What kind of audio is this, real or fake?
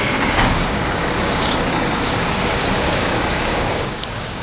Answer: fake